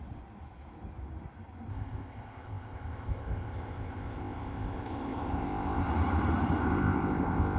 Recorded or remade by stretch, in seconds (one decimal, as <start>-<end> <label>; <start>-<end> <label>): 0.0-1.7 recorded; 1.7-5.9 remade; 5.9-6.6 recorded; 6.6-7.6 remade